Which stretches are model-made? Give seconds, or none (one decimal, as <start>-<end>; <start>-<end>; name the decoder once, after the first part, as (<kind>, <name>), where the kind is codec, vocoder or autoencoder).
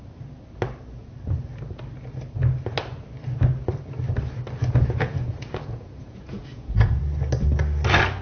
4.6-7.0 (vocoder, Vocos)